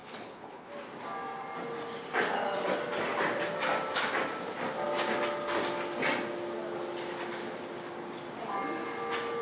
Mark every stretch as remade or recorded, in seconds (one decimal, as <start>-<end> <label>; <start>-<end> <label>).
0.0-0.7 remade; 0.7-9.4 recorded

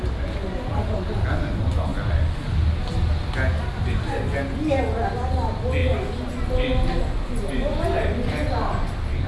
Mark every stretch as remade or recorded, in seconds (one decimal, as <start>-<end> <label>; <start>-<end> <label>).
0.0-9.3 recorded